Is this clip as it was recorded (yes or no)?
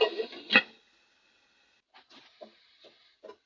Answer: yes